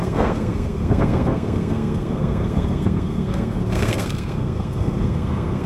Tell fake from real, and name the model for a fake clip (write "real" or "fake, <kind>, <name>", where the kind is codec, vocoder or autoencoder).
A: fake, codec, SNAC